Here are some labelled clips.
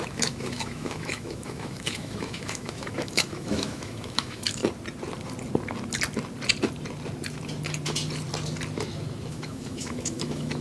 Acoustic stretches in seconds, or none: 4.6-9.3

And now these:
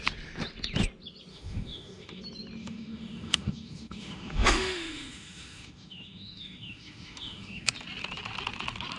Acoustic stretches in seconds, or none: 0.0-1.3; 2.2-2.6; 7.7-9.0

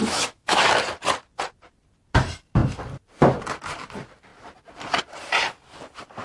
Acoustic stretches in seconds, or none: 0.8-6.2